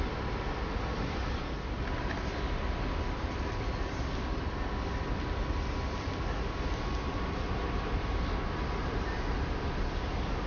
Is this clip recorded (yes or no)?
yes